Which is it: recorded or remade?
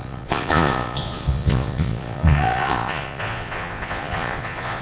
remade